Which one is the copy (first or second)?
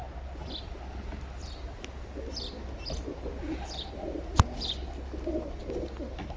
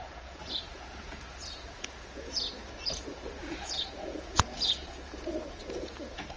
second